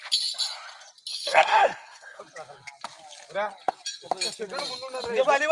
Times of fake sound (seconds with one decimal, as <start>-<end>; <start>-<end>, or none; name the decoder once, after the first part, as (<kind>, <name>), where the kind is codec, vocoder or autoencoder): 1.1-2.2 (codec, SNAC)